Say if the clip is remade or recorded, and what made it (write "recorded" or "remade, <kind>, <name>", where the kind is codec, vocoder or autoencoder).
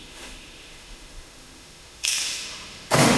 remade, autoencoder, DAC-VAE